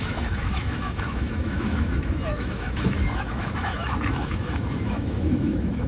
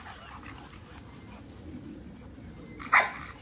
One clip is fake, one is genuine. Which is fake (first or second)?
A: first